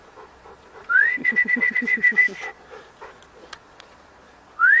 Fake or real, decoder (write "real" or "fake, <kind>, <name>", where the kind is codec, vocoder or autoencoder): fake, vocoder, Vocos